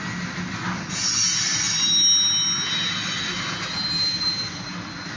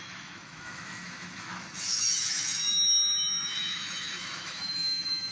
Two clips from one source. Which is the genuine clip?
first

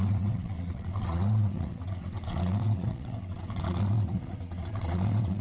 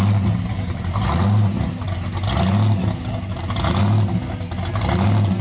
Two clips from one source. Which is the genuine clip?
second